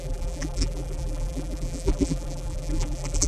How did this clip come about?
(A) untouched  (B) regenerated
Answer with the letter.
B